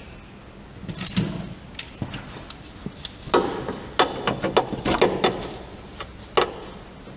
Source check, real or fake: real